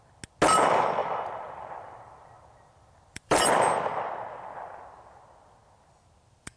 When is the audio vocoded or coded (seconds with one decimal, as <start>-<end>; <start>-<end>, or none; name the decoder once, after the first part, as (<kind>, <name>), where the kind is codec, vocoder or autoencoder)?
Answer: 1.0-3.6 (vocoder, BigVGAN v2)